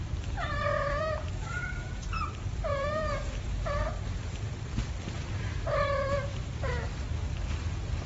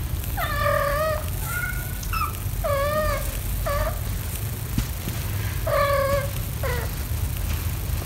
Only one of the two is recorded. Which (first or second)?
second